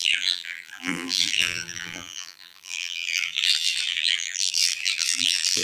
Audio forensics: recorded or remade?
remade